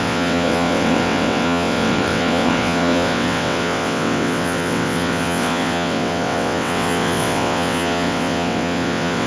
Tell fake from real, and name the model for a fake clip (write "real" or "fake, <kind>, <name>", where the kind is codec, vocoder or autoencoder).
fake, vocoder, WaveNeXt